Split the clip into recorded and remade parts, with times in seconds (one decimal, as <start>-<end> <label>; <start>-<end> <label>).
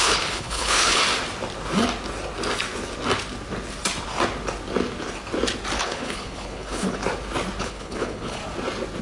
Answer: 0.0-1.0 remade; 1.0-5.8 recorded; 5.8-7.0 remade; 7.0-7.6 recorded; 7.6-8.4 remade; 8.4-9.0 recorded